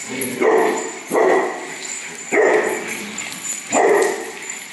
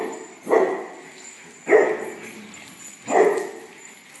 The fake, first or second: first